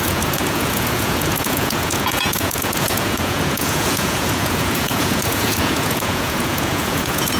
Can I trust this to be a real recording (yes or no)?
no